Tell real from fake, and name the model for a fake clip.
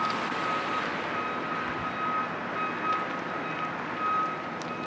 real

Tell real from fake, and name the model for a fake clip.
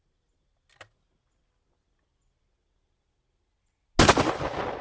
real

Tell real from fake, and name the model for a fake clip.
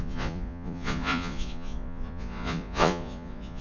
fake, vocoder, Vocos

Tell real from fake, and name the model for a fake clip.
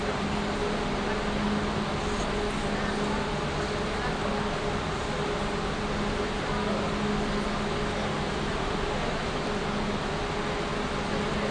real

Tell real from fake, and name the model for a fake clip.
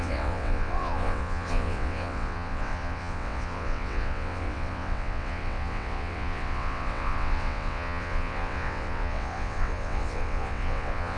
fake, vocoder, WaveNeXt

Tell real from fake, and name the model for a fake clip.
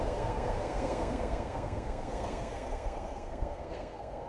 fake, codec, SNAC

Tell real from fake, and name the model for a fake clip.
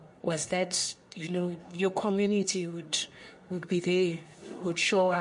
fake, codec, SNAC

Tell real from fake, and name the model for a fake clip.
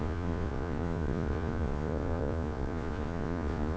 fake, vocoder, Vocos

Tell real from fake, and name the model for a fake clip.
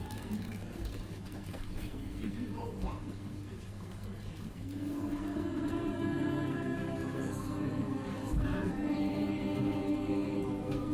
fake, codec, SNAC